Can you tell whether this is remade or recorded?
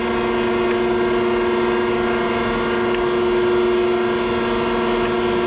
recorded